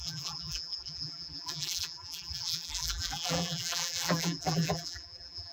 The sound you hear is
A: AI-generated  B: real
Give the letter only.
A